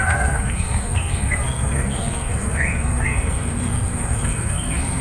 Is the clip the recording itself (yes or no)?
no